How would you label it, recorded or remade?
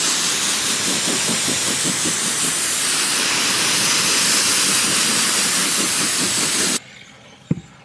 recorded